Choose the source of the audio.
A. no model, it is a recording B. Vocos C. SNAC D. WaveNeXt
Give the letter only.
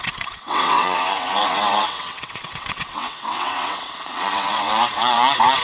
D